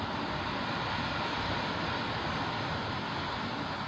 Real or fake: real